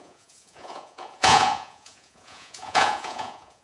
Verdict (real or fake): fake